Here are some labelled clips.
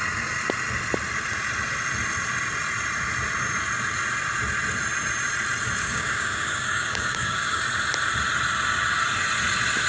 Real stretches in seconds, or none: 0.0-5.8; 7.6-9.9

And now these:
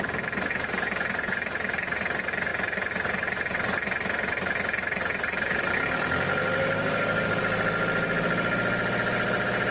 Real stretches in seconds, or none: 0.0-6.6; 7.4-9.7

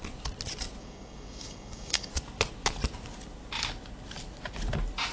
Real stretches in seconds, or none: 0.0-0.8; 2.1-5.1

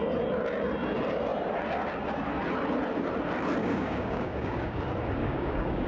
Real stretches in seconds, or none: 0.0-3.6; 4.8-5.2

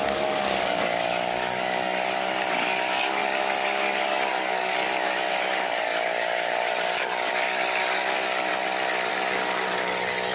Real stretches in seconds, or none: 8.5-9.1